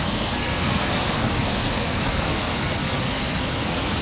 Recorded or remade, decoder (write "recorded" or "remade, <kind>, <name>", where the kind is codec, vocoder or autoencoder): remade, codec, SNAC